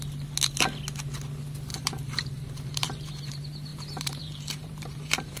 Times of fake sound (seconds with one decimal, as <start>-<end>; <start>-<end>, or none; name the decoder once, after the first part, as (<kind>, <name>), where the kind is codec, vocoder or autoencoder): 1.7-3.1 (vocoder, BigVGAN v2); 3.7-5.4